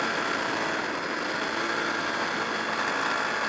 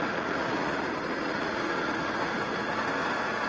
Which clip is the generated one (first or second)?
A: second